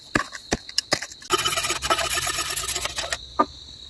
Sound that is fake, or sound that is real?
real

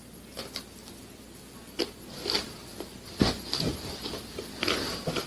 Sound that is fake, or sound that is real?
real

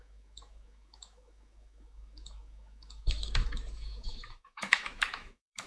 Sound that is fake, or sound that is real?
fake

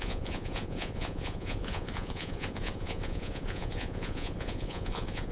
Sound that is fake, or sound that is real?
fake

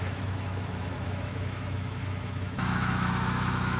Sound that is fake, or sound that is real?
fake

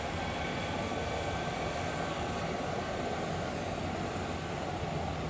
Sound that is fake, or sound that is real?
real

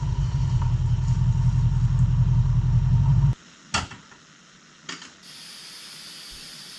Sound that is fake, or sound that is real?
real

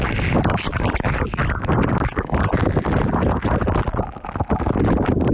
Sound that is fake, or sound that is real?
real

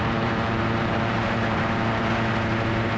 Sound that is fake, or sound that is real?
fake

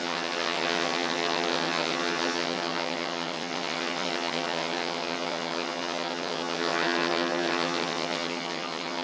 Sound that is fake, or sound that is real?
fake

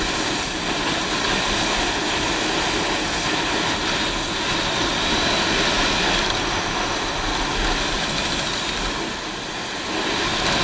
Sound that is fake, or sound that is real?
real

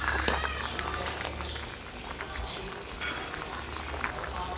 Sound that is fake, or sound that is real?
real